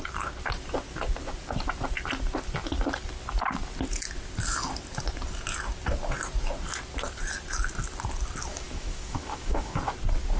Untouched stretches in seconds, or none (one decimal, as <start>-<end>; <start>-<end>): 0.0-8.5; 9.8-10.4